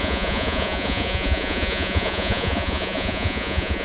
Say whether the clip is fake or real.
fake